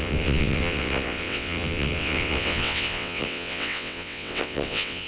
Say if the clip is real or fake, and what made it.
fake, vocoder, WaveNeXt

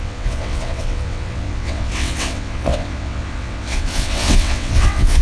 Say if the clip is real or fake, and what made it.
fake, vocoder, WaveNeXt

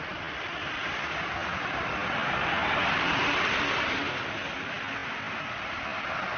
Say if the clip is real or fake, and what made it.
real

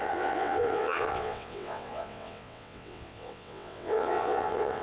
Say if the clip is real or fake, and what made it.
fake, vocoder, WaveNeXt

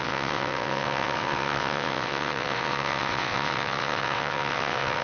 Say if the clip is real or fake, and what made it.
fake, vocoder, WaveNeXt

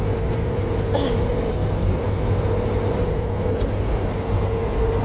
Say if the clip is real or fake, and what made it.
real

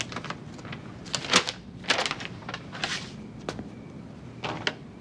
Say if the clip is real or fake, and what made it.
real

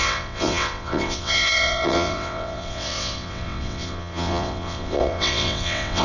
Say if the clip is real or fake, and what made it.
fake, vocoder, WaveNeXt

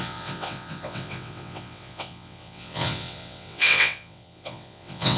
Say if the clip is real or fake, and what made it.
fake, vocoder, WaveNeXt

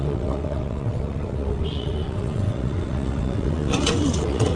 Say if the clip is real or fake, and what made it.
fake, vocoder, WaveNeXt